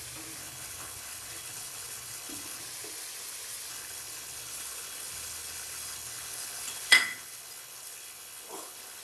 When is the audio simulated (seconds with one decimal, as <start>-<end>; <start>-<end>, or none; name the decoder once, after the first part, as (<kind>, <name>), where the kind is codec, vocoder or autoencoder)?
0.4-2.6 (codec, HILCodec); 3.7-9.0

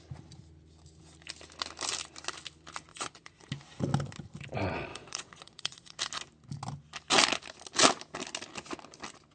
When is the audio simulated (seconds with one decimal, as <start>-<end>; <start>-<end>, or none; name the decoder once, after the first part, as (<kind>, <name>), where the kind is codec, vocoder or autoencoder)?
2.9-3.5 (vocoder, Vocos); 4.9-6.0